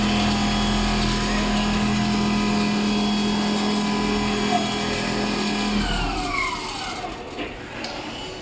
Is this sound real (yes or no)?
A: yes